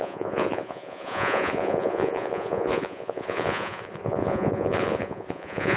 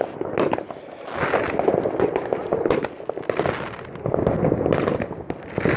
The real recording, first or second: second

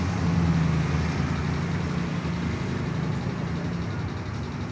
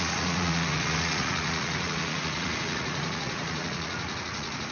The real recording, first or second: first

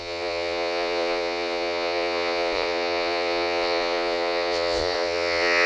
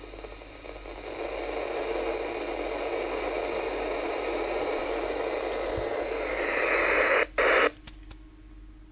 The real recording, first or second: second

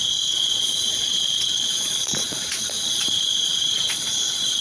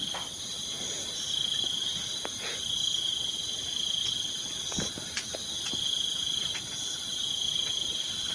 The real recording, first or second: second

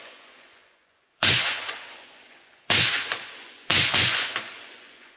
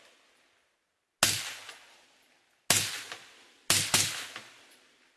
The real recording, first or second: second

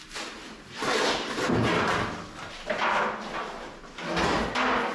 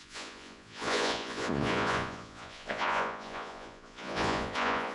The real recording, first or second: first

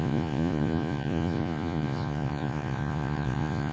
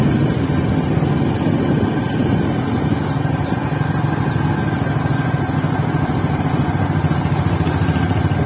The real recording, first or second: second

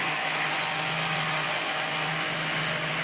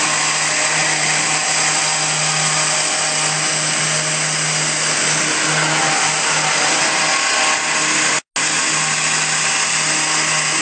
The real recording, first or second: second